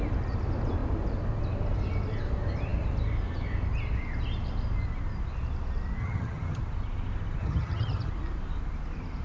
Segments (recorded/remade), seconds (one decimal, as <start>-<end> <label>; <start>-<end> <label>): 0.0-6.0 recorded; 6.0-6.6 remade; 6.6-7.4 recorded; 7.4-8.1 remade; 8.1-9.2 recorded